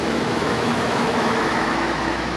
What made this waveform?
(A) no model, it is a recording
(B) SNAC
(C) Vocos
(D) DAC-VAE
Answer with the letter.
D